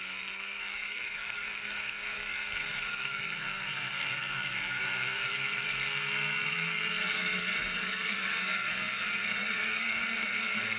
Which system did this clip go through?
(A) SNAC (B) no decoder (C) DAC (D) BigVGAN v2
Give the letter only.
A